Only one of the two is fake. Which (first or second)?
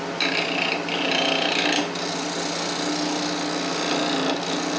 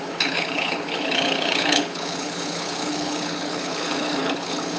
second